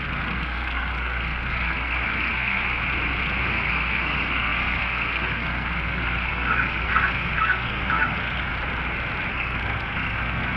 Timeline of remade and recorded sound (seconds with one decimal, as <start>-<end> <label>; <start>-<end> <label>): 0.0-2.8 remade; 2.8-3.4 recorded; 3.4-8.5 remade; 8.5-9.3 recorded; 9.3-10.6 remade